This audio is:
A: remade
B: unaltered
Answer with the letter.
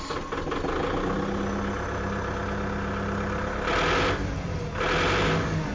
B